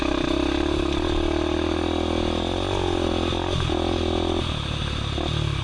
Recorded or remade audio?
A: recorded